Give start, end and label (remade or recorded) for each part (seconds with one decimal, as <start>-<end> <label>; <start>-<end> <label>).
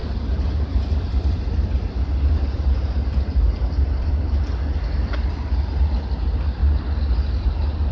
0.0-4.1 remade; 4.1-7.9 recorded